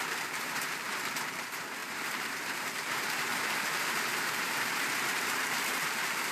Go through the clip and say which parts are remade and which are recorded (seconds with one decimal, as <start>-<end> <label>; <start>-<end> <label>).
0.0-6.3 remade